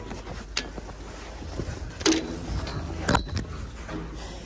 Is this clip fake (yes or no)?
no